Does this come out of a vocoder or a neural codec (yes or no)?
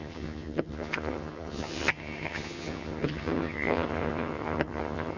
yes